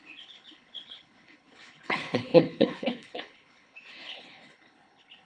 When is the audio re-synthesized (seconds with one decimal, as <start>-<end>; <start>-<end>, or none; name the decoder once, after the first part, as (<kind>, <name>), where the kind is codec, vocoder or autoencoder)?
0.0-5.3 (codec, HILCodec)